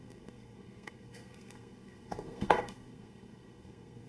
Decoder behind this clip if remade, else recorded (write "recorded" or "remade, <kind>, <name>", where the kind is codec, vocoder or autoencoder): remade, codec, SNAC